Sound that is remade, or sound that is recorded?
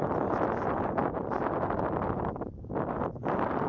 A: recorded